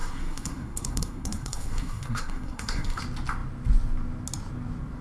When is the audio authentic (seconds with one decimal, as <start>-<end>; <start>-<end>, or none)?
3.0-5.0